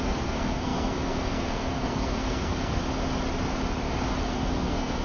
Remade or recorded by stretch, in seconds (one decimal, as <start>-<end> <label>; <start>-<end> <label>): 0.0-2.8 remade; 2.8-4.3 recorded; 4.3-5.0 remade